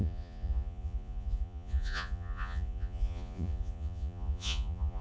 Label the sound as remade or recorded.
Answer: remade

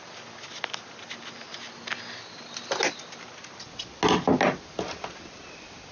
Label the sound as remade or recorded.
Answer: recorded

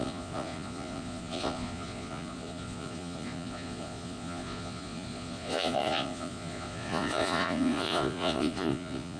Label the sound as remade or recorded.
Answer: remade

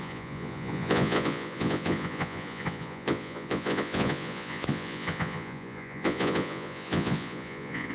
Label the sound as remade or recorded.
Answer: remade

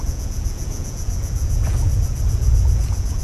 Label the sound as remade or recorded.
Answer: remade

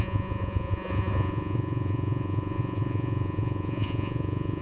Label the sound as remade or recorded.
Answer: remade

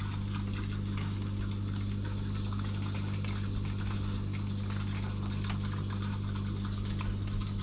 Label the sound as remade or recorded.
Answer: recorded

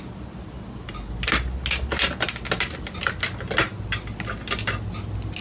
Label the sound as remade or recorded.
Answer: recorded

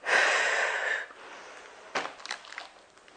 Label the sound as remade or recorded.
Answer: recorded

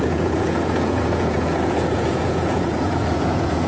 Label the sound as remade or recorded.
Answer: remade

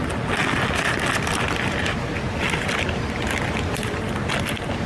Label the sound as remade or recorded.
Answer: recorded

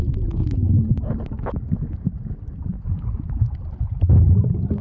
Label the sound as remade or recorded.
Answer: recorded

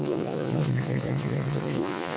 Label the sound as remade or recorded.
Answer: remade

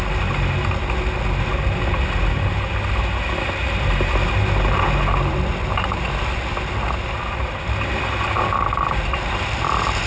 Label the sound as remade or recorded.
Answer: recorded